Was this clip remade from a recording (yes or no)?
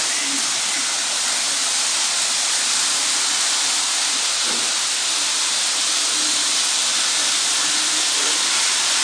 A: no